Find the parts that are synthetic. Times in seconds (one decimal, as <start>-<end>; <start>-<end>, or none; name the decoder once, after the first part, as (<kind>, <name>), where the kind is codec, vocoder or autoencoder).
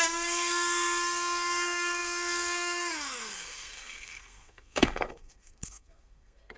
0.0-6.6 (codec, SNAC)